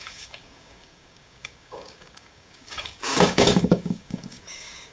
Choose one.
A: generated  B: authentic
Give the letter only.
A